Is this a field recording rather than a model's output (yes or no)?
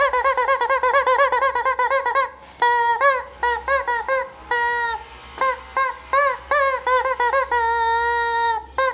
yes